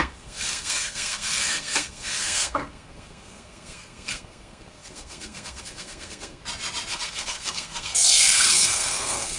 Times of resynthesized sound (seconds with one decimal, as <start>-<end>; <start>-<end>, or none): 0.0-6.4; 6.9-9.4